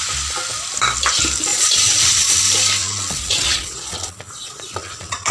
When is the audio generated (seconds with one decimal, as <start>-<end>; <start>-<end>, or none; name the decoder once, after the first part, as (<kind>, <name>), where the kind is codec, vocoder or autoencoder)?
1.5-2.4 (vocoder, Vocos); 2.8-5.3